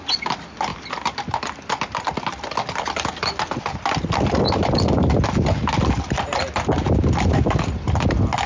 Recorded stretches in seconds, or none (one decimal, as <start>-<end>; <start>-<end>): 0.0-8.5